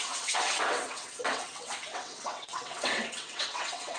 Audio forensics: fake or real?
fake